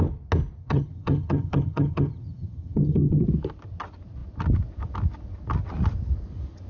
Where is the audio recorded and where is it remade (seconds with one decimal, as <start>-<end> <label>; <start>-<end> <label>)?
0.0-0.6 recorded; 0.6-3.2 remade; 3.2-6.7 recorded